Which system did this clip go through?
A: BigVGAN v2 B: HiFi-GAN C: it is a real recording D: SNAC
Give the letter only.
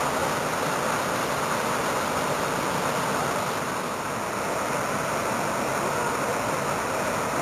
C